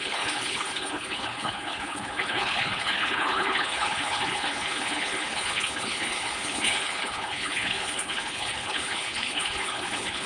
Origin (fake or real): fake